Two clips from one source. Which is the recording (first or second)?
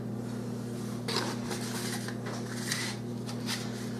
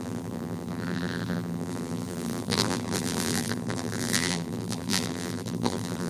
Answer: first